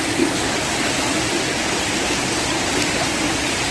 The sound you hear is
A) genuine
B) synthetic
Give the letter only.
A